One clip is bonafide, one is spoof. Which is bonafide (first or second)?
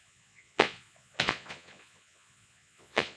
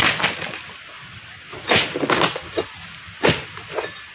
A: second